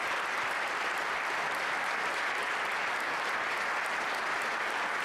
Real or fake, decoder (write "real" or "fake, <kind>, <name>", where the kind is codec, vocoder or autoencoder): real